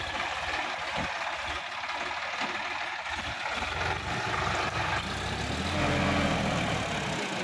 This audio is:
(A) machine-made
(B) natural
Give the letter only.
B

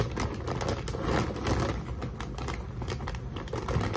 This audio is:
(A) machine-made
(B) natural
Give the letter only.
B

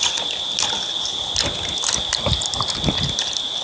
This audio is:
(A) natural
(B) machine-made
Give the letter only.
A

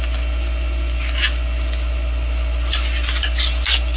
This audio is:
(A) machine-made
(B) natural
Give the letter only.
B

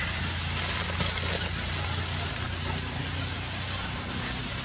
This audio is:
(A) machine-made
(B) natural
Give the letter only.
B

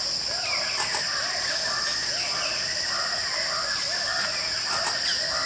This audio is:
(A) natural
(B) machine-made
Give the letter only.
A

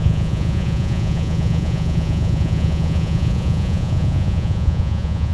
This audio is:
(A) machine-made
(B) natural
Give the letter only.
A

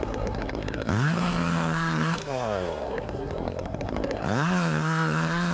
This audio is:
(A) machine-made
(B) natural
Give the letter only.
A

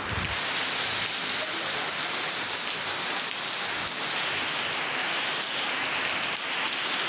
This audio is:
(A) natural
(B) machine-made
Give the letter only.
A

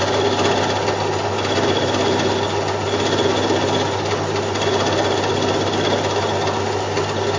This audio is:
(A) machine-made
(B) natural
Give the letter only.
B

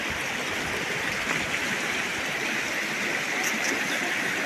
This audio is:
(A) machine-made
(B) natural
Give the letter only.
B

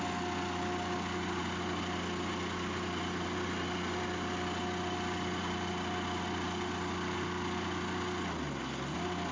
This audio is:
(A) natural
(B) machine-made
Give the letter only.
A